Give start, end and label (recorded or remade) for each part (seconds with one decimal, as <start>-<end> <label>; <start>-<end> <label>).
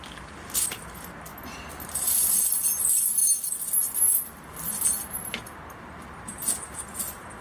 0.0-7.4 recorded